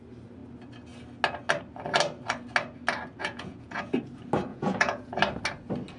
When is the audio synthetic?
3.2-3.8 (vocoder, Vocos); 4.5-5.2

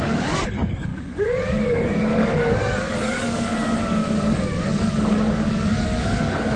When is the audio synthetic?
0.0-6.6 (codec, DAC)

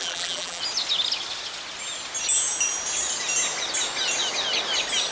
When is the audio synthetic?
0.0-0.6 (vocoder, BigVGAN v2)

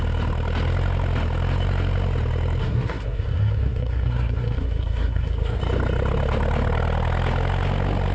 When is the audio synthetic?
2.6-5.6 (codec, SNAC)